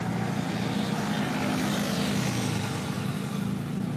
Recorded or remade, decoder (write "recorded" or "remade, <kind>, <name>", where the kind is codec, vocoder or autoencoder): recorded